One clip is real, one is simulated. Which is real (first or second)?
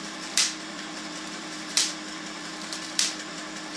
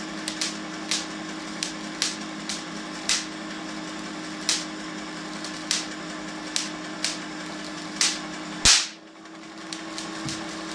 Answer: second